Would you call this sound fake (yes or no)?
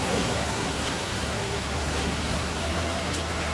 yes